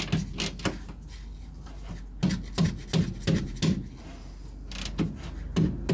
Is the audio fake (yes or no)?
no